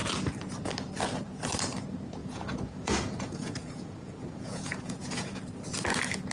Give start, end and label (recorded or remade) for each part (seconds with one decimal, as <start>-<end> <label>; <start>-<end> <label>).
0.0-2.2 recorded; 2.2-5.4 remade; 5.4-6.3 recorded